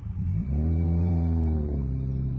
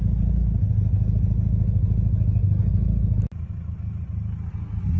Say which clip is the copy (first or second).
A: first